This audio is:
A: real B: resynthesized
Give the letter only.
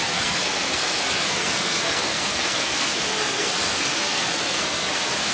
B